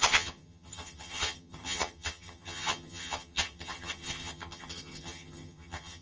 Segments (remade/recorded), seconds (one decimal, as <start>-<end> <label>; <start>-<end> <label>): 0.0-6.0 remade